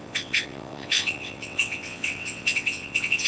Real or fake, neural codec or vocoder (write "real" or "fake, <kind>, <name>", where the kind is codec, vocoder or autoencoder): fake, vocoder, WaveNeXt